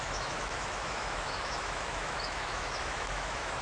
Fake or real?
fake